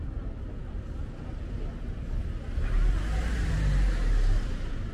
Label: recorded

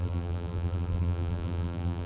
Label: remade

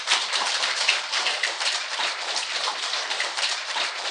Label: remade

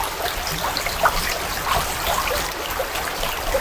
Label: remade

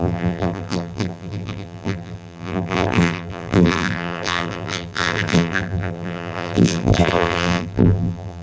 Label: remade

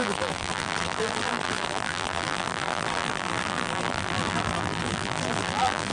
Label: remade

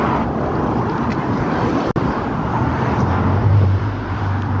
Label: remade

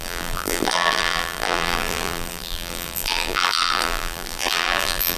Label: remade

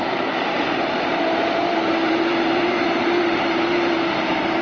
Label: remade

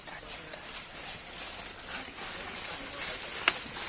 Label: recorded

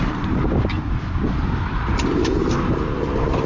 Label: remade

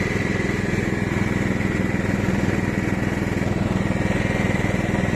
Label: recorded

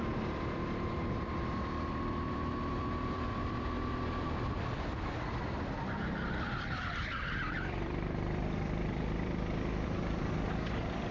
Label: remade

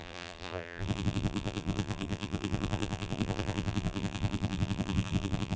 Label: remade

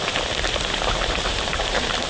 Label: remade